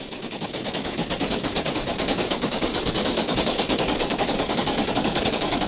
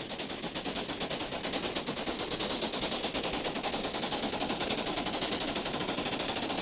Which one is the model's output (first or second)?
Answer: first